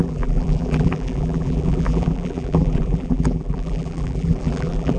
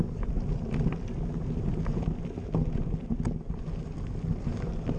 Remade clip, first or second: first